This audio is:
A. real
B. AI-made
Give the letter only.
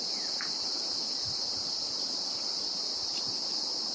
A